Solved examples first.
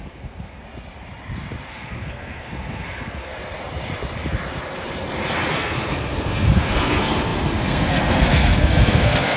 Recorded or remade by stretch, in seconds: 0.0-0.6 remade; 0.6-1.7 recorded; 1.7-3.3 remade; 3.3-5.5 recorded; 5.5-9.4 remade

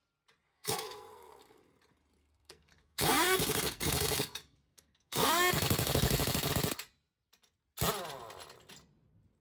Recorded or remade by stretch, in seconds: 0.0-0.5 recorded; 0.5-1.6 remade; 1.6-2.2 recorded; 2.2-6.5 remade; 6.5-9.4 recorded

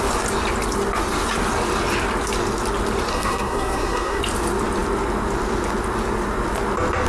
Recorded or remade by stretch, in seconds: 0.0-3.1 recorded; 3.1-4.2 remade; 4.2-7.1 recorded